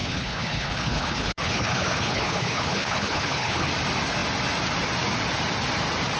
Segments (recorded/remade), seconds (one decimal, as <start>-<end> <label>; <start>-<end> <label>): 0.0-3.7 remade; 3.7-6.2 recorded